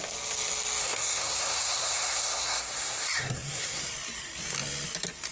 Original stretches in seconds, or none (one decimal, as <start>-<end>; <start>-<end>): 0.0-0.8; 3.8-5.3